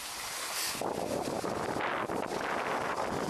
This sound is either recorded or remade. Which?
recorded